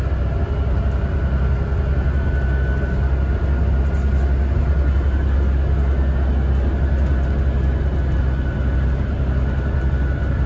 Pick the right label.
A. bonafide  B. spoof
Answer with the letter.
A